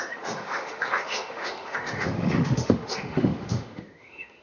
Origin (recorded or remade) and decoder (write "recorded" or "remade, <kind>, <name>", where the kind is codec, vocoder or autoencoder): remade, autoencoder, DAC-VAE